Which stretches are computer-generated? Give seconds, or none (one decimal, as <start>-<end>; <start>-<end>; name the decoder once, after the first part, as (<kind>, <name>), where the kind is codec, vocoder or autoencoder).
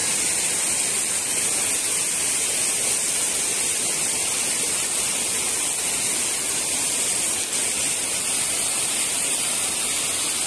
none